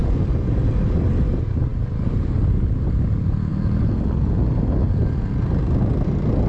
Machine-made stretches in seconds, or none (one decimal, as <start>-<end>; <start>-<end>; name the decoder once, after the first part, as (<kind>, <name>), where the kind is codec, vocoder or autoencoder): 0.0-0.7 (vocoder, BigVGAN v2)